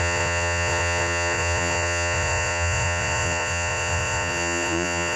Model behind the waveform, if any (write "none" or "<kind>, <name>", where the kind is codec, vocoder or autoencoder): vocoder, Vocos